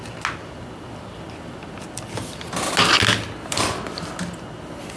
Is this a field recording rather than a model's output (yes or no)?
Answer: yes